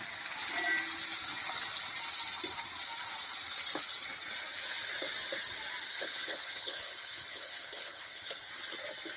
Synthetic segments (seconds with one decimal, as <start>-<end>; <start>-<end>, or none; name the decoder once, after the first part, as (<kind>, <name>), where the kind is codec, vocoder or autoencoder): 5.9-8.5 (codec, HILCodec)